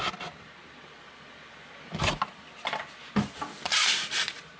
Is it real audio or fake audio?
real